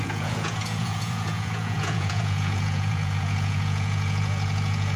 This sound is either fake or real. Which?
fake